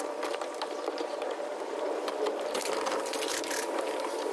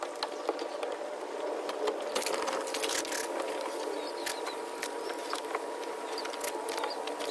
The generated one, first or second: first